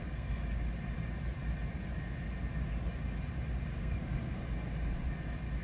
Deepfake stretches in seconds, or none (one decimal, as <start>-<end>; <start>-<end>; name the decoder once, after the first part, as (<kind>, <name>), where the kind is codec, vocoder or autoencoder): 0.0-0.4 (codec, SNAC); 3.8-4.4